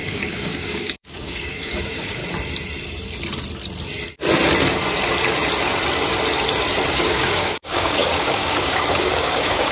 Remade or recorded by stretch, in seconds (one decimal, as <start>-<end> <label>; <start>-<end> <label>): 0.0-2.2 remade; 2.2-6.9 recorded; 6.9-9.7 remade